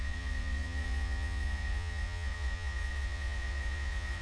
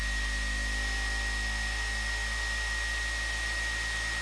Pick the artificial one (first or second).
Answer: first